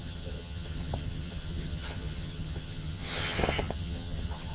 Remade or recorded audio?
remade